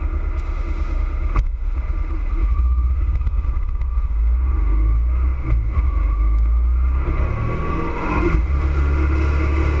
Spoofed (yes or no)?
yes